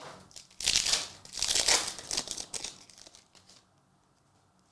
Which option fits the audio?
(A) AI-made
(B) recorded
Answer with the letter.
B